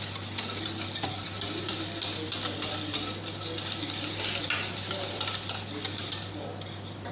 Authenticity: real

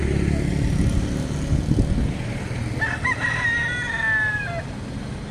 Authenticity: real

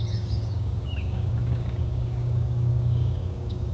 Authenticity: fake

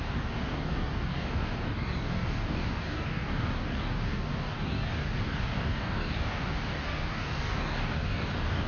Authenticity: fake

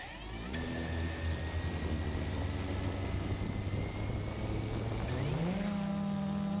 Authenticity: real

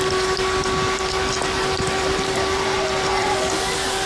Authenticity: real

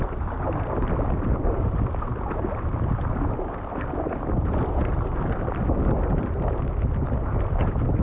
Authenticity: real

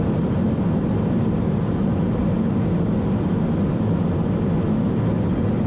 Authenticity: real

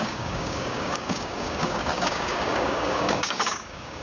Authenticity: fake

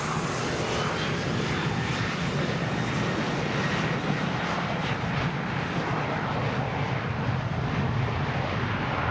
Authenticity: real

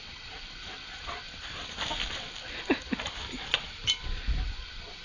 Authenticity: real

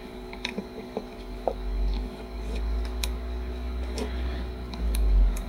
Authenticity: fake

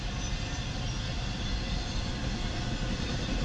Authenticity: real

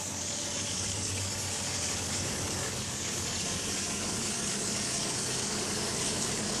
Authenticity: fake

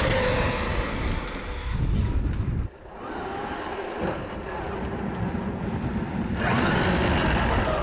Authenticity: real